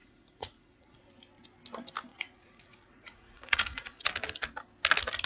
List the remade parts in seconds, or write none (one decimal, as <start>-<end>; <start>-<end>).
0.0-1.1; 2.1-4.1